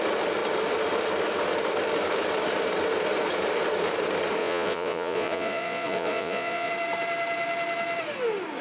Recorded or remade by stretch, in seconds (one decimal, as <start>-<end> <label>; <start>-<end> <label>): 0.0-4.4 recorded; 4.4-6.7 remade; 6.7-8.6 recorded